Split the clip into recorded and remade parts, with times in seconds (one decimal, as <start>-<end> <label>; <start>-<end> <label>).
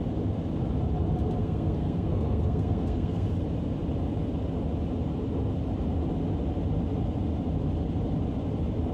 0.0-1.4 recorded; 1.4-3.3 remade; 3.3-8.9 recorded